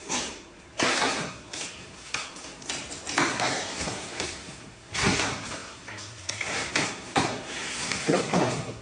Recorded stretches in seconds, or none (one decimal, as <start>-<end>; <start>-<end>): 2.7-3.3